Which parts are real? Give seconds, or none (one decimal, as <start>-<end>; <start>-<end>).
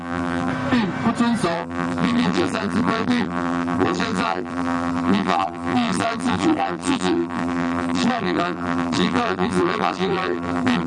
0.5-1.5